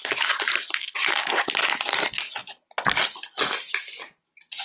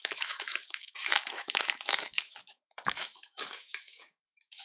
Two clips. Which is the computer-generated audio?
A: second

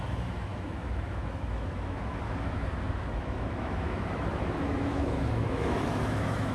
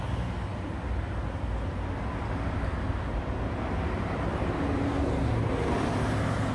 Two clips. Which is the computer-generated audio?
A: first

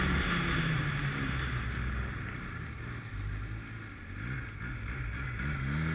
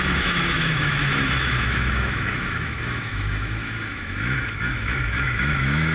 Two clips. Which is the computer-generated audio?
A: second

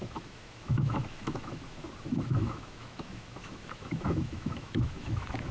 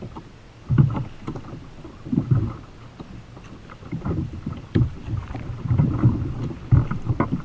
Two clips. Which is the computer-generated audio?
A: first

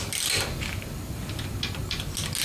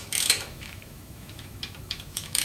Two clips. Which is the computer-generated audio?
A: second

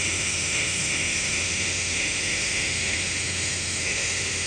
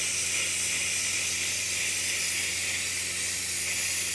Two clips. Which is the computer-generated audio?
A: first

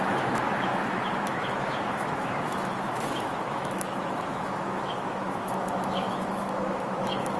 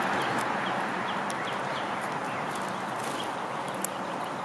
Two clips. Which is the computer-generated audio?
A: first